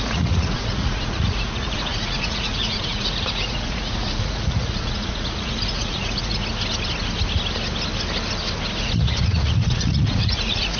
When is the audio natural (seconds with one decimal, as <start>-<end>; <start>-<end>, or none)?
6.4-8.8